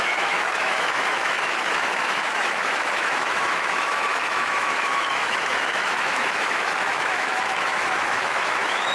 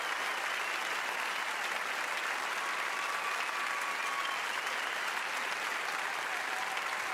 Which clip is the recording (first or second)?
second